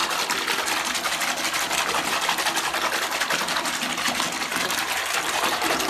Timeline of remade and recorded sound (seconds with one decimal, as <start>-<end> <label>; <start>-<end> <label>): 0.0-4.5 recorded; 4.5-5.9 remade